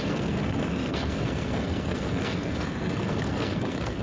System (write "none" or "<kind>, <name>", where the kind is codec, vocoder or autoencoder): codec, SNAC